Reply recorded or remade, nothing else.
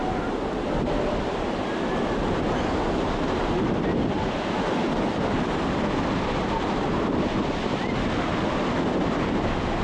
recorded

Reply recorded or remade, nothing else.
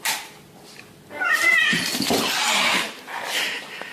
recorded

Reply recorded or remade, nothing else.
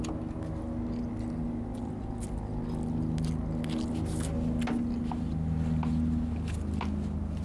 recorded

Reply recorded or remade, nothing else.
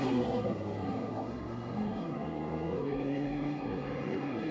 remade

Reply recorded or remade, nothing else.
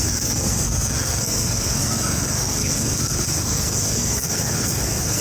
remade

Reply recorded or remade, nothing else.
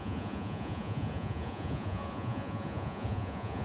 remade